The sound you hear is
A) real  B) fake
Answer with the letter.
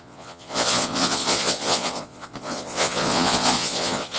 B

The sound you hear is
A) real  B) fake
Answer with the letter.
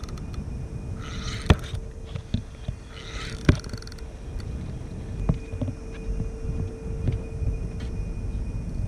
A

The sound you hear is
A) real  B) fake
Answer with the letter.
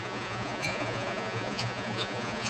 B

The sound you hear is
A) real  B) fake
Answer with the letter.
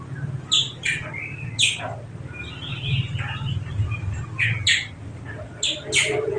A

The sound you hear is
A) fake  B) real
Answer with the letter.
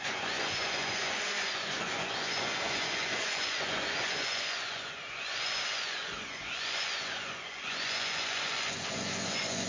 A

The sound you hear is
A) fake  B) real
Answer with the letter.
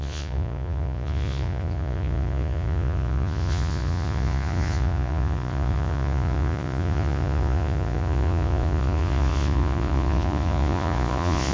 A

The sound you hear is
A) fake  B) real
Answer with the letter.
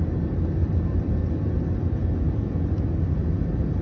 B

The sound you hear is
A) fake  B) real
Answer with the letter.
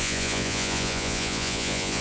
A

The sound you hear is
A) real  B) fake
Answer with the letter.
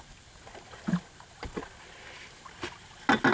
A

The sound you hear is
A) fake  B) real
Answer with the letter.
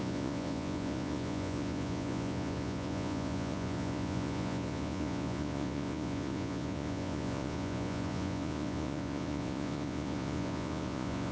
A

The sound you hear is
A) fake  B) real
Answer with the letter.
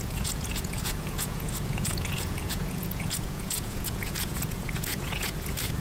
A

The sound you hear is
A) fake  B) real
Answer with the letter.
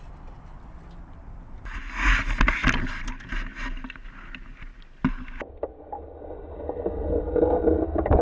B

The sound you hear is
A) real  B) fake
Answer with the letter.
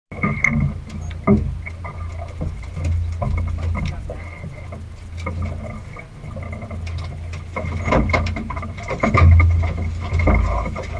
A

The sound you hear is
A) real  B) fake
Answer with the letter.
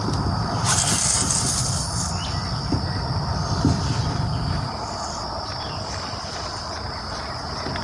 A